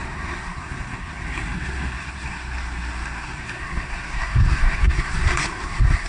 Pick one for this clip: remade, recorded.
remade